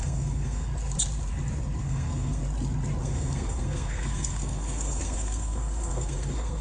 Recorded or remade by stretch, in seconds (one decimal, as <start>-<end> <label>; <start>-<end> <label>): 0.0-0.7 remade; 0.7-1.8 recorded; 1.8-2.4 remade; 2.4-3.0 recorded; 3.0-6.6 remade